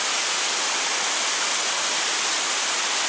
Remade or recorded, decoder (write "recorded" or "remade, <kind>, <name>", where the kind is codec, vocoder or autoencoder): recorded